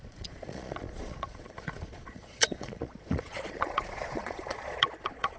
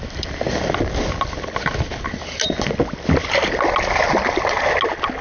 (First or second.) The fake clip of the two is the first